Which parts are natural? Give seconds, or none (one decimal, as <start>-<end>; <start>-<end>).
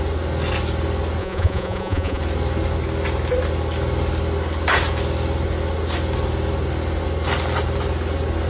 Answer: 0.0-1.2; 2.2-8.5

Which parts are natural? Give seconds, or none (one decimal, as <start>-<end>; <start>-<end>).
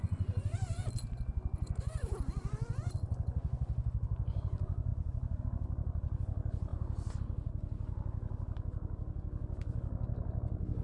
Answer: 0.0-4.9; 5.4-6.7; 7.2-10.8